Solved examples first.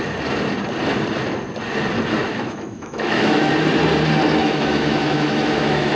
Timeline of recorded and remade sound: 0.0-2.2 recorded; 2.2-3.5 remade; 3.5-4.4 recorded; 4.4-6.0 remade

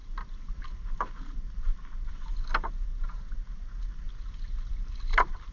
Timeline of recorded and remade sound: 0.0-4.7 recorded; 4.7-5.5 remade

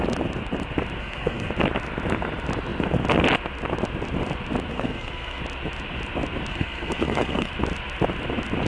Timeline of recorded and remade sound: 0.0-1.0 recorded; 1.0-1.5 remade; 1.5-4.7 recorded; 4.7-5.4 remade; 5.4-6.5 recorded; 6.5-7.5 remade; 7.5-8.7 recorded